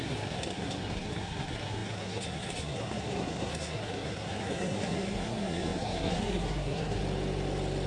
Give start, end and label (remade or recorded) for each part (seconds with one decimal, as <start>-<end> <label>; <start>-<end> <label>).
0.0-7.0 remade; 7.0-7.9 recorded